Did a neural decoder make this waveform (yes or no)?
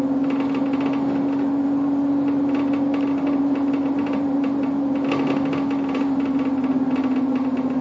no